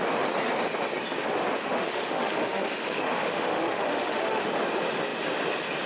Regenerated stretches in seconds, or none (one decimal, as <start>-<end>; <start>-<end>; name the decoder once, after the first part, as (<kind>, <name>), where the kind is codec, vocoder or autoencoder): 1.6-4.5 (autoencoder, DAC-VAE)